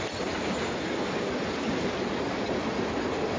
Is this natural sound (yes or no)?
yes